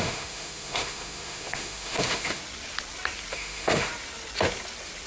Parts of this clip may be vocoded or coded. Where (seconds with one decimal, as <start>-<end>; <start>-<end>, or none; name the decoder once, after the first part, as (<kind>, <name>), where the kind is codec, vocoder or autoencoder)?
0.0-2.4 (autoencoder, DAC-VAE); 3.3-3.9